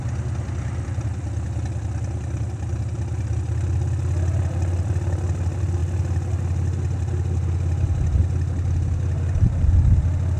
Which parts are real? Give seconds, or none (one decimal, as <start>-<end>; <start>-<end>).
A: 0.0-10.4